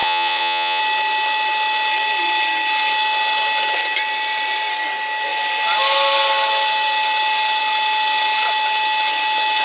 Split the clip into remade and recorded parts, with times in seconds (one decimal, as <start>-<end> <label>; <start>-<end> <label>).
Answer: 0.0-0.8 remade; 0.8-9.6 recorded